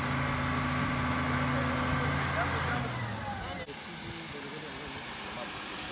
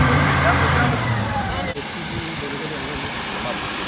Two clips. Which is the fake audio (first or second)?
second